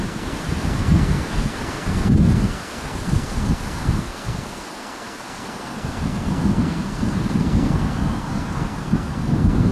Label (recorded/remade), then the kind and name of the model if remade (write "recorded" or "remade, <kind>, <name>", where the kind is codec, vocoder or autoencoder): remade, codec, SNAC